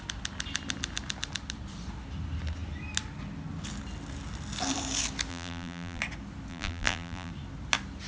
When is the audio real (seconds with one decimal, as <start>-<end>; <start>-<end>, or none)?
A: 0.0-5.3; 6.0-6.5; 7.3-8.1